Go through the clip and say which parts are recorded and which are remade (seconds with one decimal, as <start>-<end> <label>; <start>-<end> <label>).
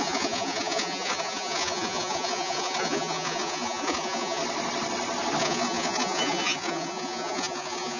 0.0-4.4 remade; 4.4-5.4 recorded; 5.4-8.0 remade